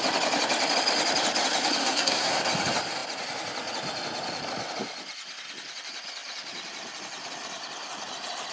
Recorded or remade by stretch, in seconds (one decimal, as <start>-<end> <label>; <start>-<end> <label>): 0.0-1.8 recorded; 1.8-2.4 remade; 2.4-8.5 recorded